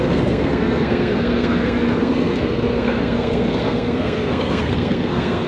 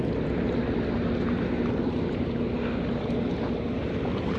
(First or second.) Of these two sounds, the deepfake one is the first